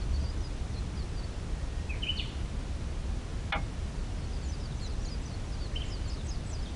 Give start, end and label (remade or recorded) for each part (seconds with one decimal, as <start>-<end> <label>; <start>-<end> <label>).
0.0-6.8 recorded